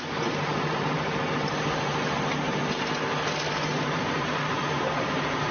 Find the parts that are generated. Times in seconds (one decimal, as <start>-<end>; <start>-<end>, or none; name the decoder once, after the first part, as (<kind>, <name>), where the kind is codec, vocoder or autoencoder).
0.4-2.6 (vocoder, BigVGAN v2); 3.7-4.3